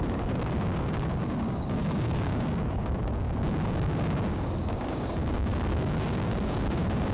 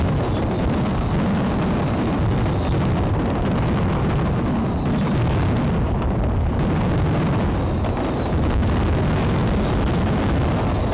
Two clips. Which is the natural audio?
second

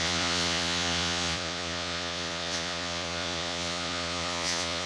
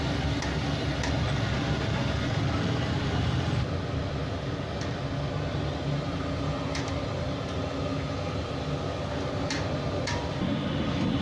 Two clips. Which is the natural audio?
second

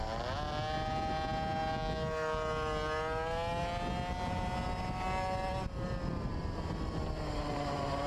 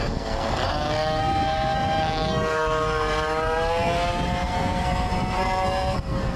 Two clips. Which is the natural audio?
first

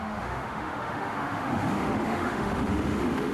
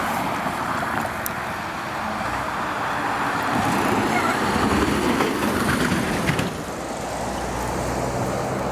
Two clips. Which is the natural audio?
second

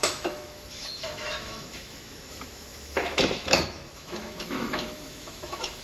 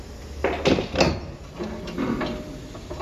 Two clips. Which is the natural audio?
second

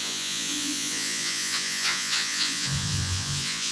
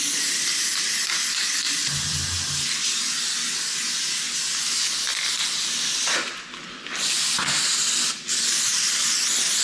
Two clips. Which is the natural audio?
second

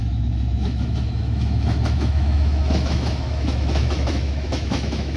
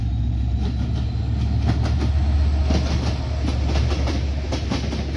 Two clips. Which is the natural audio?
second